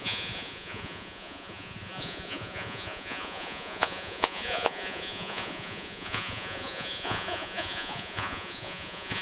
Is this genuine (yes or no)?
no